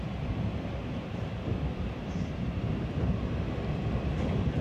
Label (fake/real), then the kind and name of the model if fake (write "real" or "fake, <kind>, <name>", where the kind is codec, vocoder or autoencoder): fake, vocoder, BigVGAN v2